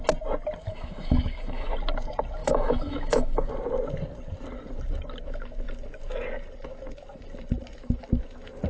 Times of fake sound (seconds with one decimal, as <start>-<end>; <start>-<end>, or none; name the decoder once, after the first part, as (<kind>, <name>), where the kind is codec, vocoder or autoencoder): 0.6-1.7 (autoencoder, DAC-VAE); 2.4-3.5